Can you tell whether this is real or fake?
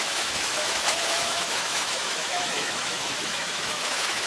fake